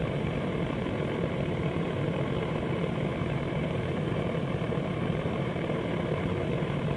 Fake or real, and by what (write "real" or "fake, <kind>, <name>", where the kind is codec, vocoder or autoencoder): fake, vocoder, BigVGAN v2